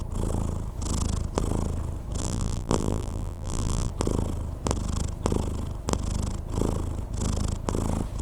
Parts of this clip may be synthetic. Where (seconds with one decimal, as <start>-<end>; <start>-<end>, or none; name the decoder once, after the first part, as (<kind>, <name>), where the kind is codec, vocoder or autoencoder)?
2.2-3.9 (vocoder, BigVGAN v2)